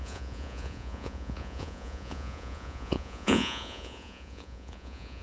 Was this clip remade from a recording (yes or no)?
yes